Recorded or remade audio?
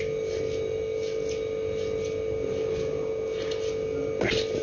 recorded